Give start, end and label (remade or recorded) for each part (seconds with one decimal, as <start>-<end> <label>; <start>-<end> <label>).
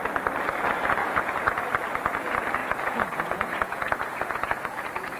0.0-1.0 recorded; 1.0-1.7 remade; 1.7-2.6 recorded; 2.6-5.2 remade